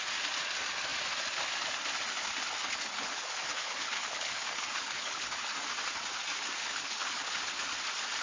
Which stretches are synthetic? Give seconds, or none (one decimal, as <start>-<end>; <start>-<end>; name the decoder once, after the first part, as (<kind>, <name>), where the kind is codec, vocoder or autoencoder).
2.6-5.5 (codec, HILCodec); 6.6-7.4